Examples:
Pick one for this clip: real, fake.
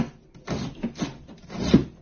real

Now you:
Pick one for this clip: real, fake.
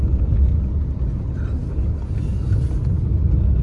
real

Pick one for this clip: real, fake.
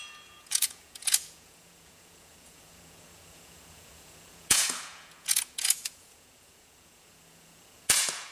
fake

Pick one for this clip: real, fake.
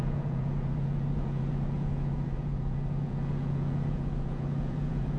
fake